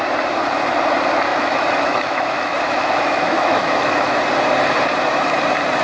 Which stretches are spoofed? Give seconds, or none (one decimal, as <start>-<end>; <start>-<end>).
1.3-4.2